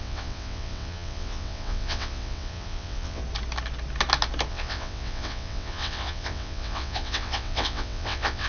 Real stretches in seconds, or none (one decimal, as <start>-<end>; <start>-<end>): 3.2-4.5